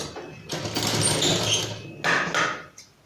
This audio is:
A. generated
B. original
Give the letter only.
B